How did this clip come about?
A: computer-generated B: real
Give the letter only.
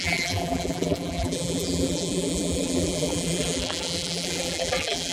A